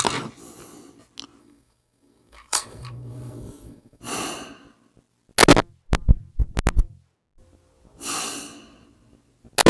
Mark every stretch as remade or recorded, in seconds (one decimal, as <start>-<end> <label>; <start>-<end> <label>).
0.0-1.4 recorded; 1.4-4.0 remade; 4.0-9.7 recorded